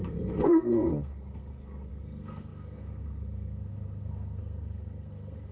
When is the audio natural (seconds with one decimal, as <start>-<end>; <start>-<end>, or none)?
none